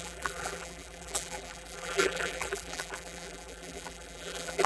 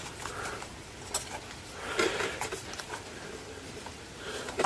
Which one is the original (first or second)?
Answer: second